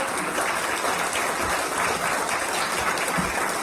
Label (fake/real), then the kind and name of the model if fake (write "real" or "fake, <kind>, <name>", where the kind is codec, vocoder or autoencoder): real